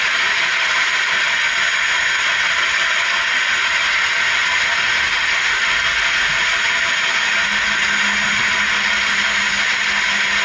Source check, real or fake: real